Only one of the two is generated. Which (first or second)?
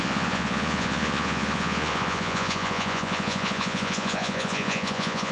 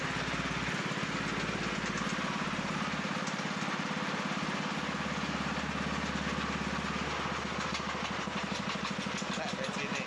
first